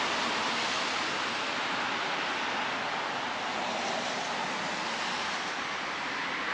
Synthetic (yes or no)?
no